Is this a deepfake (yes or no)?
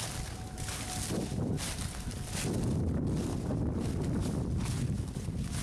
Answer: no